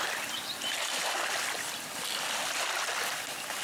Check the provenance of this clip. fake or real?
real